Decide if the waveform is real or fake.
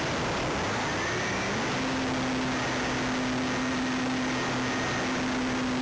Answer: real